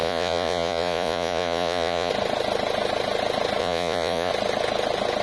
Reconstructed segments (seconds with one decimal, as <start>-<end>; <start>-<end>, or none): 0.0-2.1; 3.6-4.3